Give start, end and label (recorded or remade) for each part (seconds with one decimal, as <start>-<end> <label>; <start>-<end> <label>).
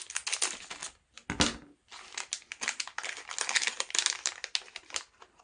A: 0.0-5.4 recorded